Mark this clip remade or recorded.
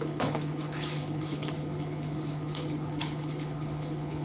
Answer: remade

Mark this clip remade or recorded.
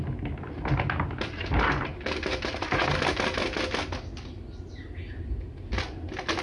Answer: recorded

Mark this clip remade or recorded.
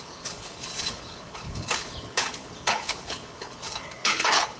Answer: remade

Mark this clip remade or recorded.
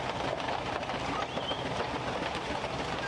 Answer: recorded